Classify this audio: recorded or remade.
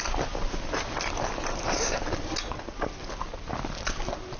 recorded